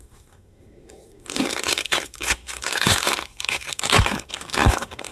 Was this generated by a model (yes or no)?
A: yes